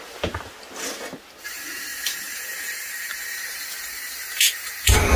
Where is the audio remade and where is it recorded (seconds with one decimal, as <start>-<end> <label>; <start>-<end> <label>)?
0.0-1.9 recorded; 1.9-5.2 remade